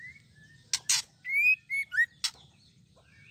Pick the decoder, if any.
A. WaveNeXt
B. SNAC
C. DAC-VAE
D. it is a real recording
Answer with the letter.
D